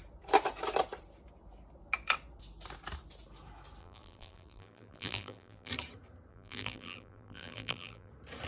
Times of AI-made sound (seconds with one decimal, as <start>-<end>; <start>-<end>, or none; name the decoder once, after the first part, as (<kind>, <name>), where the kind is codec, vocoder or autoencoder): 3.8-5.7 (vocoder, BigVGAN v2); 6.3-8.1